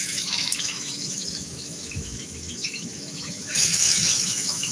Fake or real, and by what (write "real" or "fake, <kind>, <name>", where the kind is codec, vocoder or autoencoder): fake, autoencoder, DAC-VAE